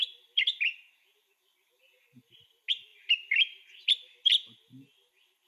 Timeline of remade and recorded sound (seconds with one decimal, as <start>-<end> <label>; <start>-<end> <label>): 0.0-5.5 recorded